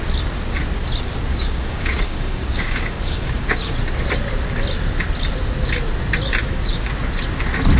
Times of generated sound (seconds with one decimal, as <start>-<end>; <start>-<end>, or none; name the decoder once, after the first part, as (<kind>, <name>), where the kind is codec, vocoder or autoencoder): 1.3-3.7 (codec, DAC); 6.4-6.9